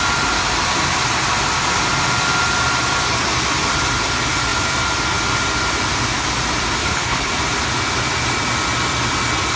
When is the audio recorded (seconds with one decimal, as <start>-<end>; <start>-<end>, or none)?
0.0-6.8; 7.3-9.6